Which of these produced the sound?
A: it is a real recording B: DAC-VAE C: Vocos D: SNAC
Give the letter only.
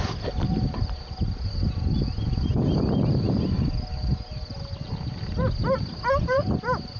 A